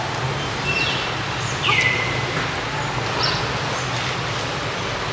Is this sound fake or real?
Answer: real